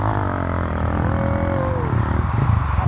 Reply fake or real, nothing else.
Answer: real